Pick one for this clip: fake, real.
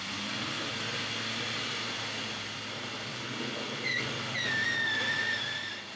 real